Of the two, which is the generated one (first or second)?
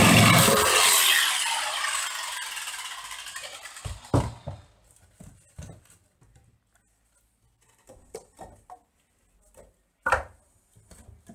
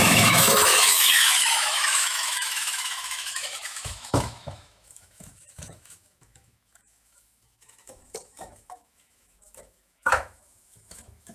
second